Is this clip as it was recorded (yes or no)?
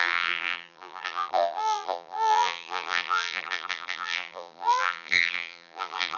no